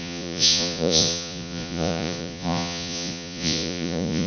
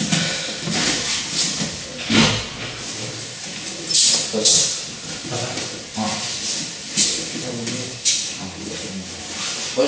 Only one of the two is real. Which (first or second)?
second